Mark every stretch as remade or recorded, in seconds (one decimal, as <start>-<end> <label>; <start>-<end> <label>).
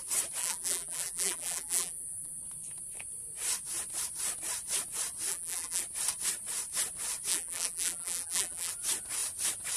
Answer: 0.0-0.4 recorded; 0.4-2.4 remade; 2.4-5.3 recorded; 5.3-5.8 remade; 5.8-7.3 recorded; 7.3-8.7 remade; 8.7-9.8 recorded